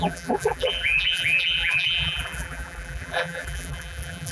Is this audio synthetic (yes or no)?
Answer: yes